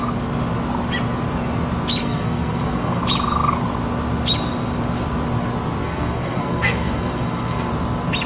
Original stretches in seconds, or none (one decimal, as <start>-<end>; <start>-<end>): 0.0-2.0; 3.0-5.8; 7.7-8.3